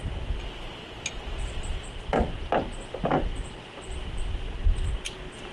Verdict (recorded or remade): recorded